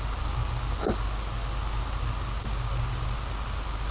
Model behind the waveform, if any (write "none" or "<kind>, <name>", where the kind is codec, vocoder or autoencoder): none